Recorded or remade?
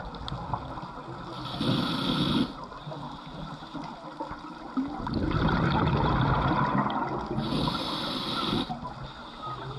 recorded